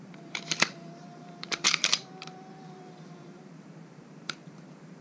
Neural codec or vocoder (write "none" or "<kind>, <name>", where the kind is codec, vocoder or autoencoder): vocoder, BigVGAN v2